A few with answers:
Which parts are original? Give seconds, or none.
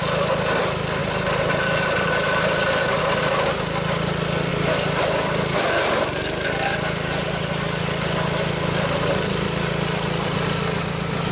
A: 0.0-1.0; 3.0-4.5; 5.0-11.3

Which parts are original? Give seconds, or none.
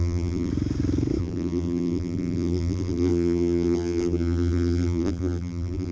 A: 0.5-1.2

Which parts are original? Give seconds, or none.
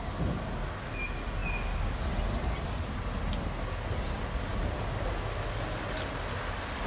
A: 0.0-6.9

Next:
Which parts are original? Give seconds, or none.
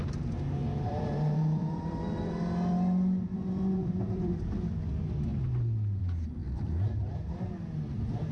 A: 0.0-0.6; 2.0-3.8; 4.8-6.4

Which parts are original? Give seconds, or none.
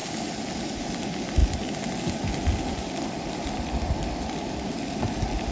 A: 0.0-5.5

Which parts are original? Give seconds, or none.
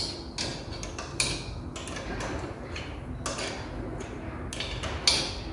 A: 0.0-5.5